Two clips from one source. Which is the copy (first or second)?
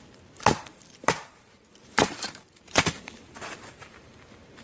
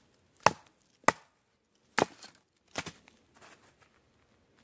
first